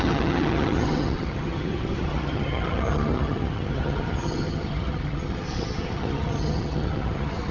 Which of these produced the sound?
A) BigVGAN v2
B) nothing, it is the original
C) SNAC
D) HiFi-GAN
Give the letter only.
D